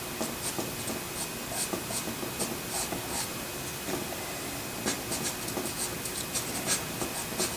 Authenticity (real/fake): real